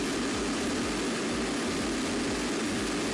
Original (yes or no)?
yes